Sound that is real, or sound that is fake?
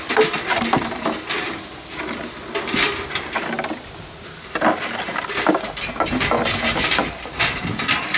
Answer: real